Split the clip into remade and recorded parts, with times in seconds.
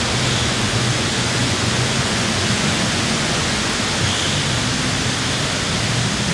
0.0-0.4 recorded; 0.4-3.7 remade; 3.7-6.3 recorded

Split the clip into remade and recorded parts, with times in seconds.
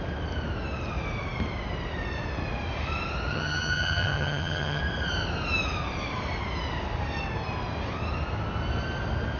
0.0-3.3 recorded; 3.3-4.8 remade; 4.8-9.4 recorded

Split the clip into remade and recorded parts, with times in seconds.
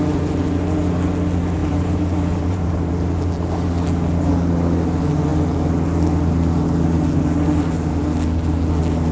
0.0-1.6 recorded; 1.6-2.9 remade; 2.9-9.1 recorded